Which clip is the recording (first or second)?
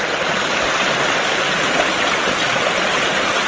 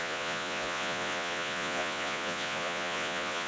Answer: first